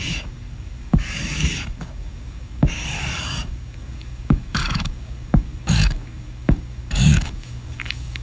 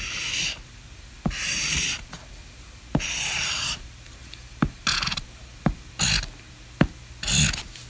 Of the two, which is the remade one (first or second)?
first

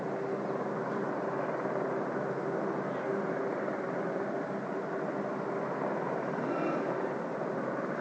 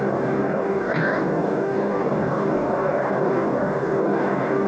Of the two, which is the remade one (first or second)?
second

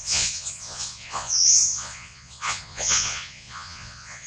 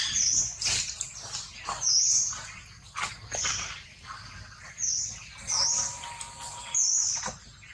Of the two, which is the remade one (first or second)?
first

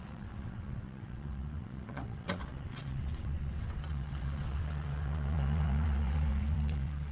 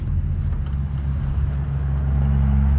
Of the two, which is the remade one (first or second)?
first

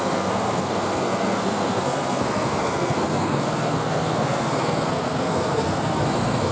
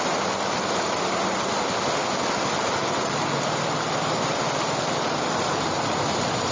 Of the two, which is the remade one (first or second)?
first